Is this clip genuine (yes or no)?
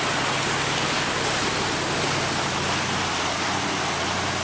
yes